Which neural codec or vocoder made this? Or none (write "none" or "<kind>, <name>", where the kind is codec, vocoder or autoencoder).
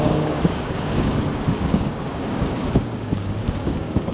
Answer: codec, DAC